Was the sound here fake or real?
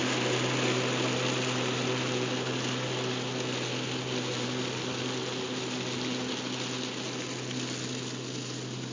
real